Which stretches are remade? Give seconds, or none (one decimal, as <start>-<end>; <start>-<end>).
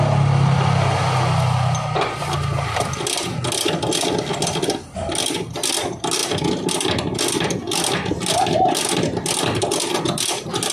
none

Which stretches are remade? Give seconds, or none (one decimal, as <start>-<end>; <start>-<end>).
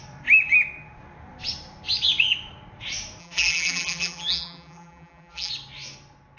3.2-5.5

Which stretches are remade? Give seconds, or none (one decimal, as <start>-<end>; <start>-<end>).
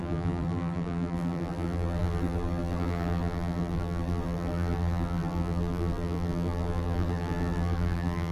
0.0-8.3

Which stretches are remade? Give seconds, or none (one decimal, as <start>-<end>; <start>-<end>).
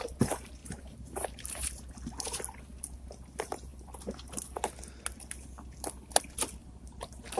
0.6-1.8; 6.6-7.4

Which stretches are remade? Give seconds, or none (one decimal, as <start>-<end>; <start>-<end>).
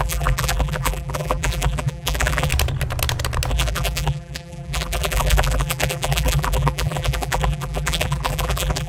0.0-2.5; 3.5-8.9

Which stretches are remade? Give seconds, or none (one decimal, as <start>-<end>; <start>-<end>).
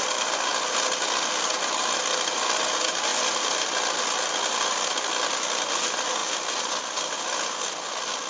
none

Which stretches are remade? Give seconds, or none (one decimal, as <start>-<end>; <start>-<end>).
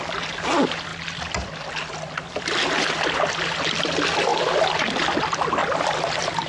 5.6-6.5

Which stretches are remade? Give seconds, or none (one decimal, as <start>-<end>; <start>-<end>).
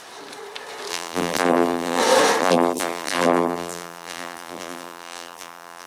0.9-2.0; 2.4-5.9